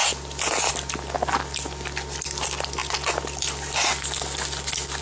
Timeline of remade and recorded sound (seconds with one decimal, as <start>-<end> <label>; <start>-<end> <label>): 0.0-5.0 recorded